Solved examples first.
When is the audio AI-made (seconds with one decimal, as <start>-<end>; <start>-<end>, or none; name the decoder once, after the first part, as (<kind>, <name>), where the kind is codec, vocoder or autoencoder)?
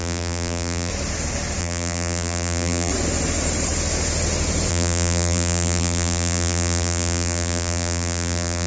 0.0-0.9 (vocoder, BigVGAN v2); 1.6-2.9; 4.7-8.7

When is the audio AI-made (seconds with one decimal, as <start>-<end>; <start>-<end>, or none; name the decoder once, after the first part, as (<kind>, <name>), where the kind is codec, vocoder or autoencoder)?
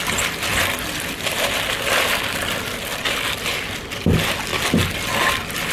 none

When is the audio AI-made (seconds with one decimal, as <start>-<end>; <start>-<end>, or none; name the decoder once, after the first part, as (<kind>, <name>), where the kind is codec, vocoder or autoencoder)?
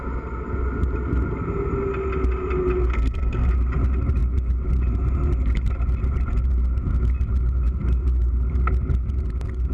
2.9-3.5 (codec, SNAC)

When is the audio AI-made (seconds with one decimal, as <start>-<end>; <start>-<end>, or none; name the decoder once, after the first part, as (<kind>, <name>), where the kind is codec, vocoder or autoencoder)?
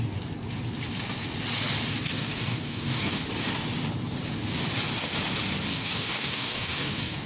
2.2-3.2 (codec, DAC); 5.7-7.3